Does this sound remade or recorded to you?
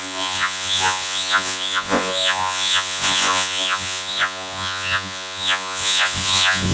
remade